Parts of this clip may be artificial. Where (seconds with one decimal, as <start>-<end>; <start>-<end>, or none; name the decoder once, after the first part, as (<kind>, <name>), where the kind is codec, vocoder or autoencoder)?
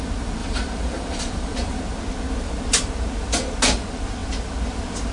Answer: 0.4-1.8 (vocoder, BigVGAN v2)